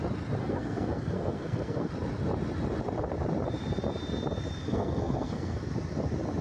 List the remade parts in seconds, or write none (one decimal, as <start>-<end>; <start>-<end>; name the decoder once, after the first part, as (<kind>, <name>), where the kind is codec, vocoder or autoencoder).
0.4-1.9 (codec, SNAC); 4.6-5.6